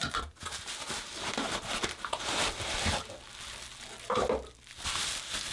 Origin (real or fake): real